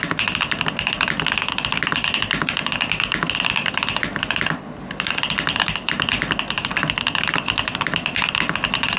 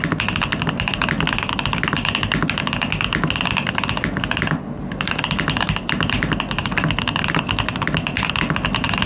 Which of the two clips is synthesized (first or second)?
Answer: first